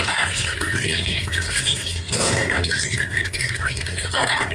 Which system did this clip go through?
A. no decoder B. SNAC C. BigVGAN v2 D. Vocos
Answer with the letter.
B